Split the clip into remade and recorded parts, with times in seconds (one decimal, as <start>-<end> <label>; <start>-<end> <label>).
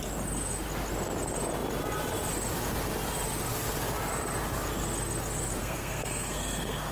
0.0-5.6 recorded; 5.6-6.9 remade